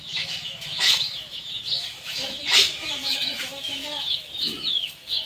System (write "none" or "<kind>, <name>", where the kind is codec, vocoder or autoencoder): autoencoder, DAC-VAE